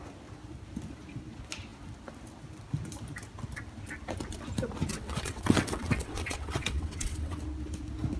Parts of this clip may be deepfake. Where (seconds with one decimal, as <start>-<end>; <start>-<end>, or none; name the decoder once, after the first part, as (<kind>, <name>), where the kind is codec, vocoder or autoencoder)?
4.9-7.4 (vocoder, WaveNeXt)